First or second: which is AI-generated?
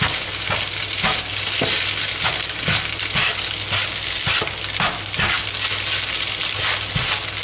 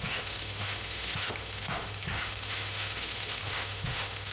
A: second